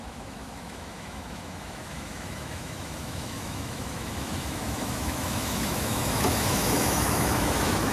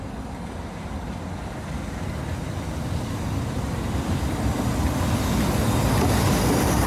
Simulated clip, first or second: first